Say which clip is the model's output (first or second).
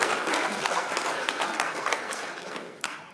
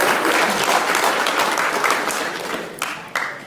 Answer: first